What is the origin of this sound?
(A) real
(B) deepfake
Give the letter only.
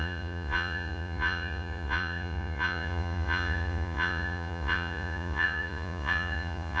B